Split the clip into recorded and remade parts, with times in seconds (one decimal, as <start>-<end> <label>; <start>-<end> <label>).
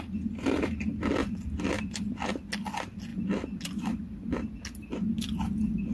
0.0-5.9 recorded